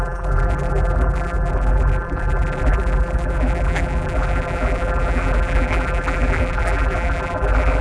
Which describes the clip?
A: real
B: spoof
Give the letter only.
B